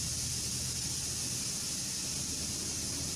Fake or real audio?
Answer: real